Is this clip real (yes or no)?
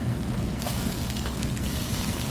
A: no